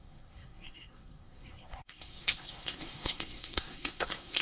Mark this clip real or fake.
fake